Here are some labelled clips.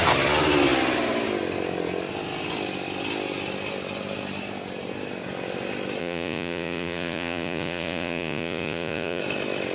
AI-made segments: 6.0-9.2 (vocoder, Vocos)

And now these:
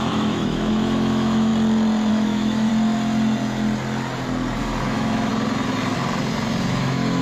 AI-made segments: 0.0-1.5 (autoencoder, DAC-VAE); 2.1-2.7; 4.8-5.3; 6.7-7.2

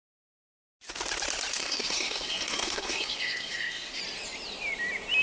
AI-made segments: 1.5-4.0 (codec, SNAC)

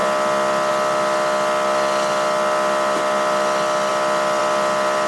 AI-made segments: none

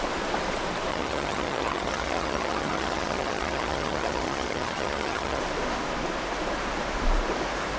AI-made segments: 0.9-5.4 (vocoder, HiFi-GAN)

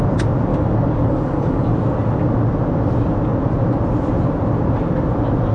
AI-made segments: 0.5-1.7 (codec, DAC)

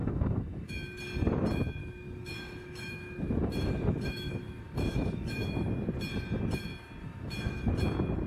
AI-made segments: 0.0-0.7 (autoencoder, DAC-VAE); 1.8-5.7; 7.0-7.7

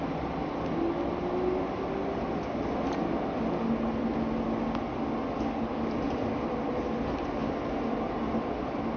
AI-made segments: none